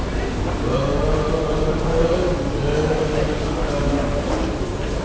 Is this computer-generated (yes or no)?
no